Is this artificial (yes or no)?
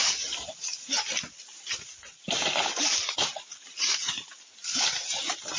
yes